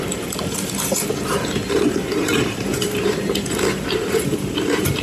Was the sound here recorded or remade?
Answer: remade